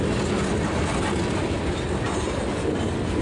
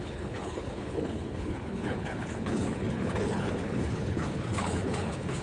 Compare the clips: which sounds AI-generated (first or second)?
second